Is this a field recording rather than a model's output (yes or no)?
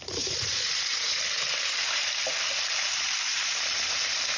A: no